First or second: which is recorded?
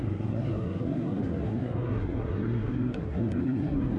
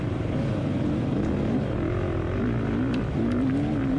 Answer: second